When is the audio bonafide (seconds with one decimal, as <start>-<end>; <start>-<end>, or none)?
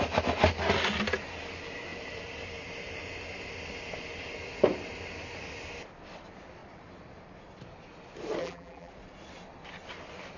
0.0-8.4; 8.9-10.4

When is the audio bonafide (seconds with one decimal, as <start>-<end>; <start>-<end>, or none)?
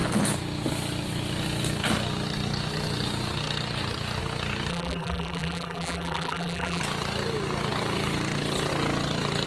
0.0-4.7; 6.8-9.5